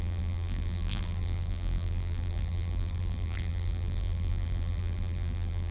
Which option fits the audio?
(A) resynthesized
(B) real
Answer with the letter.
A